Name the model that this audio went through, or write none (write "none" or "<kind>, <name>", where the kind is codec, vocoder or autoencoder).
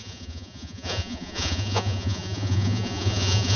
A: vocoder, Vocos